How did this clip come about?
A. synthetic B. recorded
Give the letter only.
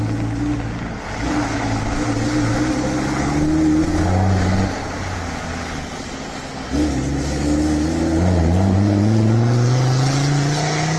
B